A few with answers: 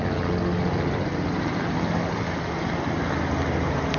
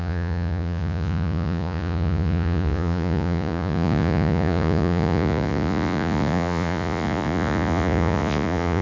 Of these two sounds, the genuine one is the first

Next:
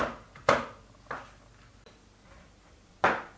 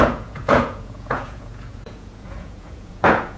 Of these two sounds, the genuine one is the first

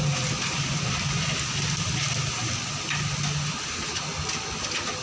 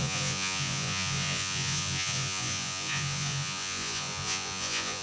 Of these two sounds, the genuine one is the first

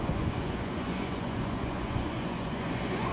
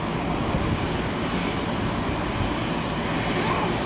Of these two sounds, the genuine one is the second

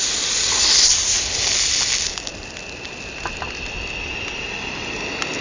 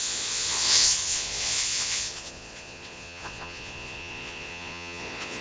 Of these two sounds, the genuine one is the first